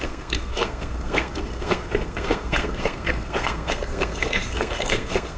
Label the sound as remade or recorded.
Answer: remade